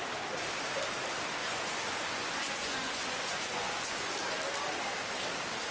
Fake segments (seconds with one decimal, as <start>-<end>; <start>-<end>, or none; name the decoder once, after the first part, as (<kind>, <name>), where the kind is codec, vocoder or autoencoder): 1.4-4.1 (vocoder, Vocos)